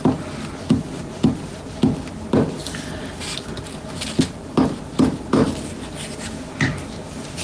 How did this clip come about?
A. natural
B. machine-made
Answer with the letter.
A